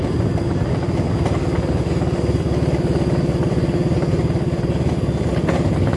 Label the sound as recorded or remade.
recorded